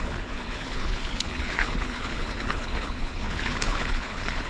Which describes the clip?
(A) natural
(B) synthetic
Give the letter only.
B